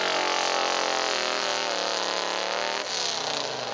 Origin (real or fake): real